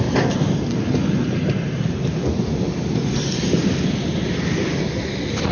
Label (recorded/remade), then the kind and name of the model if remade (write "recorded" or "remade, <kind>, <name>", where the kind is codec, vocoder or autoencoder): recorded